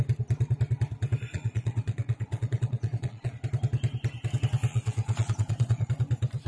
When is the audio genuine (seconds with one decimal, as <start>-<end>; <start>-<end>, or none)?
0.0-1.3; 3.3-4.7; 5.9-6.5